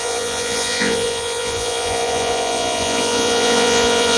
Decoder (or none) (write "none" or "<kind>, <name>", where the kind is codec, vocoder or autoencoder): vocoder, Vocos